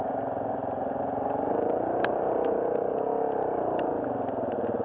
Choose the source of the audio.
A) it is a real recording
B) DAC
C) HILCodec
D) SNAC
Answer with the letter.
A